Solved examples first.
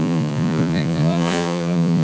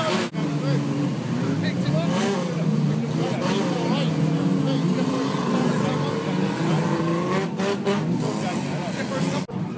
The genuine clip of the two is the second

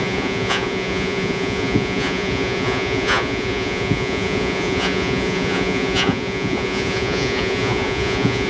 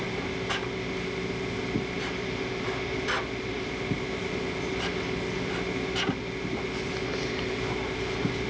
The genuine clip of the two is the second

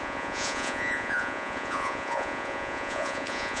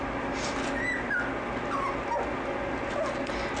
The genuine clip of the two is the second